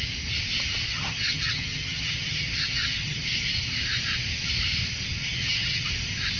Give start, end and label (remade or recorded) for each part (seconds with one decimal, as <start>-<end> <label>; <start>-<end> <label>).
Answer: 0.0-0.9 recorded; 0.9-3.2 remade; 3.2-5.2 recorded; 5.2-5.9 remade; 5.9-6.4 recorded